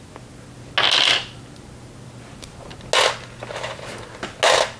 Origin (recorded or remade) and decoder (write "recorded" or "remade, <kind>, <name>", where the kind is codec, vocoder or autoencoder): recorded